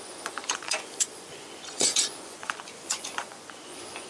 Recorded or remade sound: remade